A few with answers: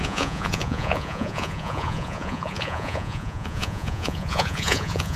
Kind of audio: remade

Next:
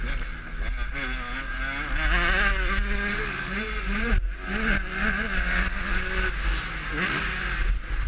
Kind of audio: recorded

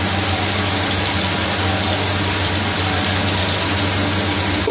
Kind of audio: recorded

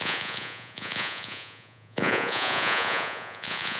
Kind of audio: remade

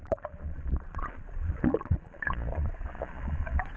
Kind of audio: remade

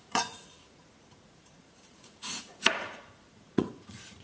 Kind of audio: remade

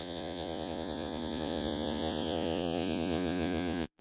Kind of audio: remade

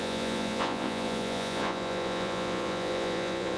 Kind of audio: remade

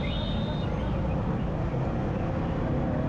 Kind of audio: recorded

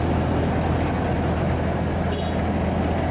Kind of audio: recorded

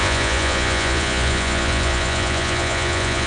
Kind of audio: remade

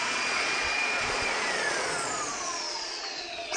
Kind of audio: remade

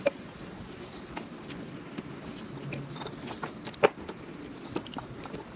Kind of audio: recorded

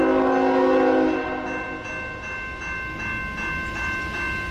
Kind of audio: recorded